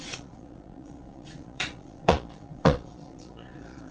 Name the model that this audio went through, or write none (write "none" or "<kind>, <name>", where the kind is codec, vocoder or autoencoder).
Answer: vocoder, Vocos